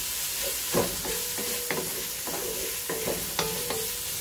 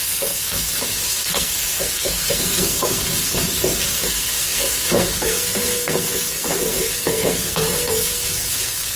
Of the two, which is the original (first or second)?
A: first